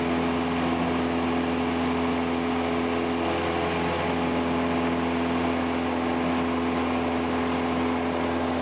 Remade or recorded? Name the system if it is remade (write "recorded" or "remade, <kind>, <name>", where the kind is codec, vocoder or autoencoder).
recorded